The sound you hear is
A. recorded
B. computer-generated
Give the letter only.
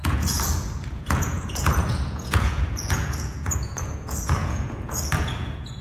B